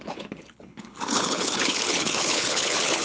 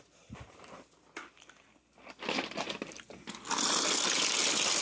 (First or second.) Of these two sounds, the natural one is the second